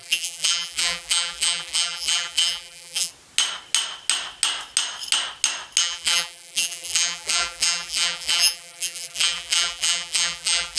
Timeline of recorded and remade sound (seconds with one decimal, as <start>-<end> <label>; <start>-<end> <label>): 0.0-3.1 remade; 3.1-5.8 recorded; 5.8-10.8 remade